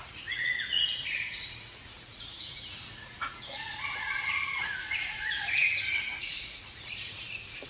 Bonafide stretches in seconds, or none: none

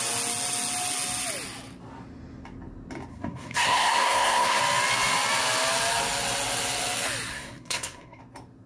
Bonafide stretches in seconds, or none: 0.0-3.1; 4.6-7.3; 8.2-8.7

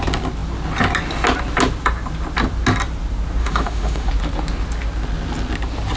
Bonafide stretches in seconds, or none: 0.0-3.4; 4.1-6.0

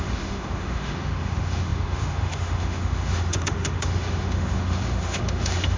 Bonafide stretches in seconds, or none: none

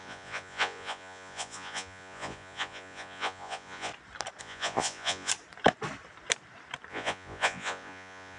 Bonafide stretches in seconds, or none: 3.9-4.4; 5.3-6.9

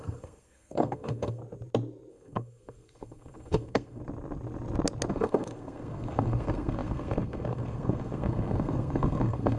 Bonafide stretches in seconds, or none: 1.4-2.1; 4.0-5.1

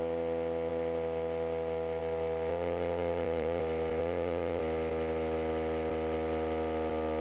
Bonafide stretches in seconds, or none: 0.0-2.5; 3.6-4.0; 4.6-7.2